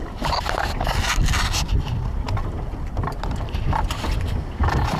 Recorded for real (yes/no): yes